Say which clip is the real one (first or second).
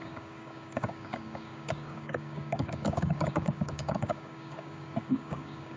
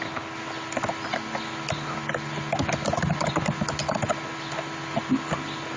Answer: second